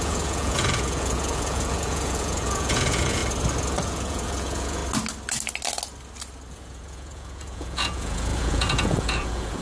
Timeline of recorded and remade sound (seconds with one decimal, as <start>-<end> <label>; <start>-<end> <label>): 0.0-3.2 remade; 3.2-3.8 recorded; 3.8-4.8 remade; 4.8-6.5 recorded; 6.5-9.6 remade